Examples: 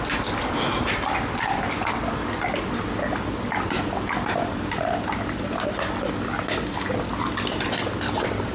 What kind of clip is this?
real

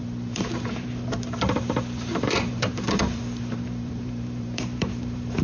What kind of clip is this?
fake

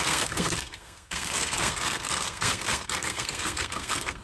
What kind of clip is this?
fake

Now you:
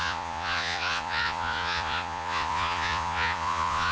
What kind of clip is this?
fake